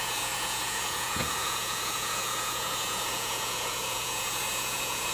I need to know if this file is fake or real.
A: fake